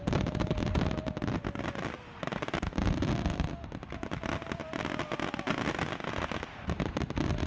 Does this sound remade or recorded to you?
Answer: recorded